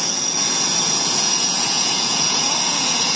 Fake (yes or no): yes